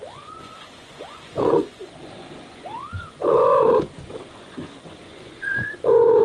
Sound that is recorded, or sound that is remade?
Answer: remade